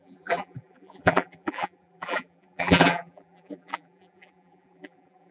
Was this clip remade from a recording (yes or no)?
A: yes